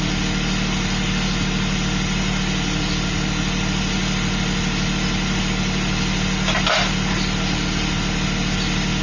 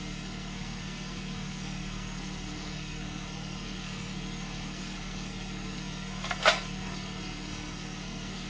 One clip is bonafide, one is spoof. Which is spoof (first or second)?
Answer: second